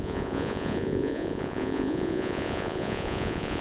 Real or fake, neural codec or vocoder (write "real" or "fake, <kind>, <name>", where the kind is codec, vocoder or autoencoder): fake, vocoder, Vocos